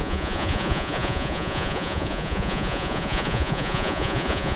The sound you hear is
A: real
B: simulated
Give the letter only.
B